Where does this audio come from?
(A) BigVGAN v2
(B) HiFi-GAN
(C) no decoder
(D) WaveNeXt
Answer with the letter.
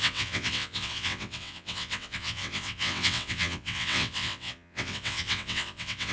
D